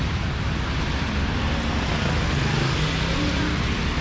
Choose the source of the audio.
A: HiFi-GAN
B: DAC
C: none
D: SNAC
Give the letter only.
C